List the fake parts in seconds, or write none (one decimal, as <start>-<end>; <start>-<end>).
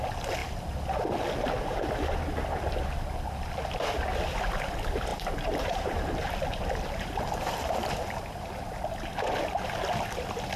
5.1-7.7